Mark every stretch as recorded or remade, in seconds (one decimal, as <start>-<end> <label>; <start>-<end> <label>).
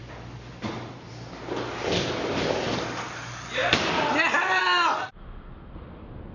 0.0-3.6 recorded; 3.6-4.6 remade; 4.6-6.3 recorded